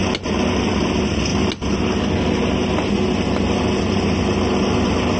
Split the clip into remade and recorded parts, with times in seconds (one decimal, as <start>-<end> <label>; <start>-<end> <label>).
0.0-5.2 recorded